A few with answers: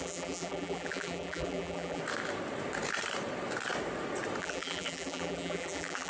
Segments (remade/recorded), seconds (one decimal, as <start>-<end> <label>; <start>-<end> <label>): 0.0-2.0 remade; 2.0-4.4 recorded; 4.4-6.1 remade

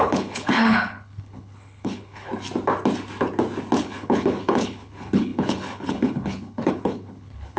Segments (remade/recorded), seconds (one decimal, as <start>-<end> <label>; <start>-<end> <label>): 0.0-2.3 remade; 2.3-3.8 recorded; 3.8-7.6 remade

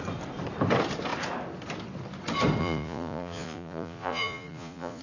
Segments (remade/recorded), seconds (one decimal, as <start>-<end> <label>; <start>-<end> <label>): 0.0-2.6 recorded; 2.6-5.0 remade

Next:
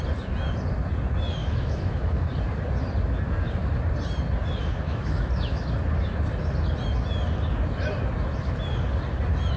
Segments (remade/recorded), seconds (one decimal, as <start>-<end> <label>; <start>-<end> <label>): 0.0-1.4 recorded; 1.4-2.2 remade; 2.2-4.6 recorded; 4.6-5.6 remade; 5.6-9.6 recorded